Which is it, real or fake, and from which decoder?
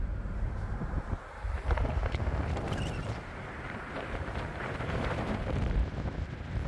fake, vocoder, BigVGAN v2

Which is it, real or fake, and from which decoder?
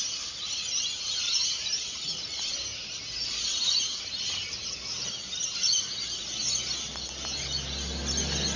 real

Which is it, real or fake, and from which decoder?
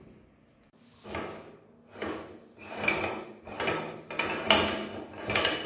real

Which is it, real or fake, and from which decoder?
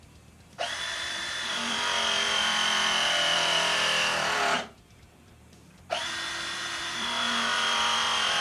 fake, vocoder, BigVGAN v2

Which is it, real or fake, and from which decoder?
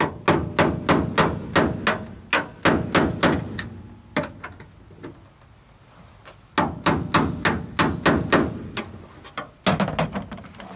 real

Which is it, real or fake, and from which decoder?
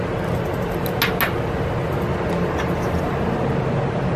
real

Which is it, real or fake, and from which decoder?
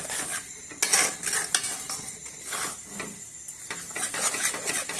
real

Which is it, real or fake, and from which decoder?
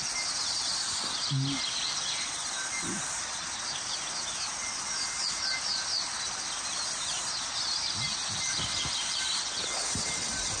real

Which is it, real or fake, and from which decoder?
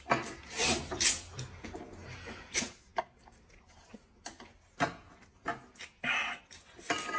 real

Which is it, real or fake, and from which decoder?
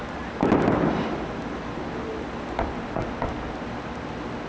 real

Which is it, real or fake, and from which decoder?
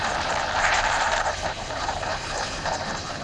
fake, vocoder, BigVGAN v2